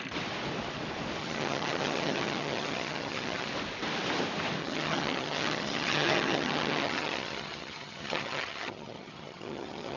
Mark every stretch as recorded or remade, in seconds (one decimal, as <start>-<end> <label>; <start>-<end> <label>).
0.0-1.2 recorded; 1.2-3.5 remade; 3.5-4.6 recorded; 4.6-10.0 remade